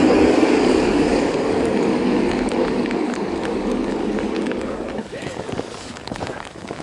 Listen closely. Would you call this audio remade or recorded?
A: remade